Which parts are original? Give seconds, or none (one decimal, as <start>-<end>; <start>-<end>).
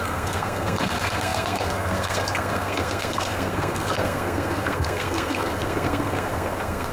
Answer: none